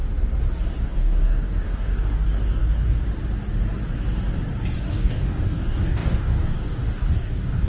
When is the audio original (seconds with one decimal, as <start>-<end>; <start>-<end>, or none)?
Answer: 0.0-0.8; 3.0-4.8

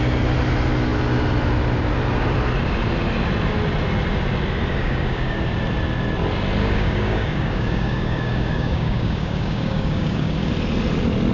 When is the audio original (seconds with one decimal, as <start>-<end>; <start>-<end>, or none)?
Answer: 0.0-4.8; 5.4-6.6; 10.5-11.3

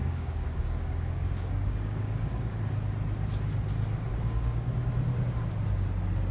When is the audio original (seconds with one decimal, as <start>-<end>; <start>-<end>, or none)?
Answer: 2.6-4.1; 4.7-6.3

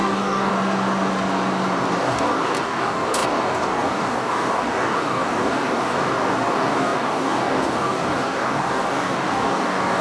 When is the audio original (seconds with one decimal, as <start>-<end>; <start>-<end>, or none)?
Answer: 0.5-1.9

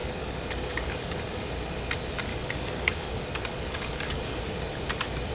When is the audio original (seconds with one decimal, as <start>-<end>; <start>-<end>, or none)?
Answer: 1.5-2.3; 4.4-5.3

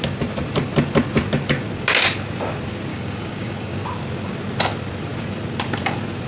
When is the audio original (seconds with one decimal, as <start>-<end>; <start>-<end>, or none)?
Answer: 0.0-2.9; 3.8-6.3

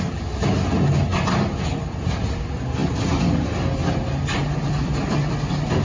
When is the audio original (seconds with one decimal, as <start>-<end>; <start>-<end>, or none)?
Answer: 0.0-5.8